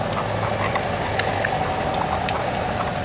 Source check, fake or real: real